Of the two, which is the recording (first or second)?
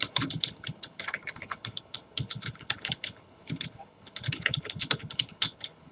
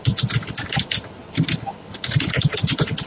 second